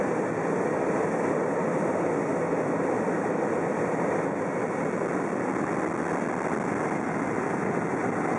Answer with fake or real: real